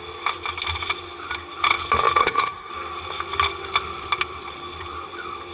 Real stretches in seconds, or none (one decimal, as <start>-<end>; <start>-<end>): 0.0-2.2; 2.7-5.5